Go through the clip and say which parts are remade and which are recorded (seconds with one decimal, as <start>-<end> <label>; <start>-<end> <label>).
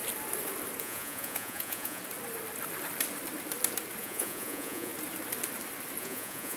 0.0-0.8 recorded; 0.8-2.0 remade; 2.0-4.0 recorded; 4.0-4.9 remade; 4.9-6.0 recorded; 6.0-6.6 remade